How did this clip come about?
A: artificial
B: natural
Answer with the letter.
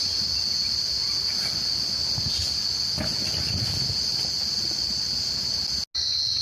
B